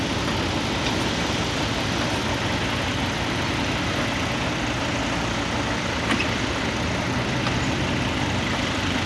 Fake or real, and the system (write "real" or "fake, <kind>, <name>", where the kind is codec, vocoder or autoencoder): real